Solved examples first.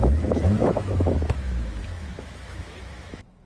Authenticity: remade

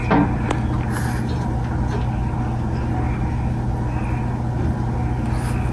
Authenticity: recorded